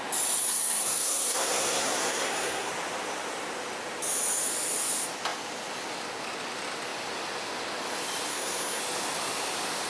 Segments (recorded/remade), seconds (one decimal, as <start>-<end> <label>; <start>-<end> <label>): 0.0-0.5 recorded; 0.5-2.7 remade; 2.7-8.3 recorded; 8.3-8.8 remade; 8.8-9.9 recorded